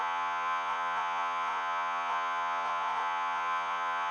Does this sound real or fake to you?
fake